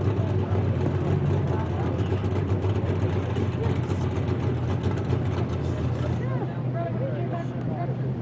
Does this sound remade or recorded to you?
recorded